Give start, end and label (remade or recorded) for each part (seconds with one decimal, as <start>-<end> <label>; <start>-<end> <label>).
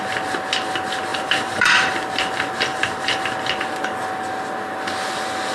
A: 0.0-1.1 recorded; 1.1-1.9 remade; 1.9-2.7 recorded; 2.7-3.2 remade; 3.2-5.5 recorded